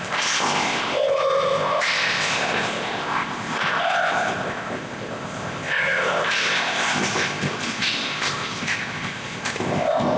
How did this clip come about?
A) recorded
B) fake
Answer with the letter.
B